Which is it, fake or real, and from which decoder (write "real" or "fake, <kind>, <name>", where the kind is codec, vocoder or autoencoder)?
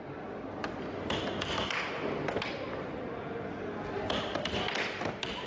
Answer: real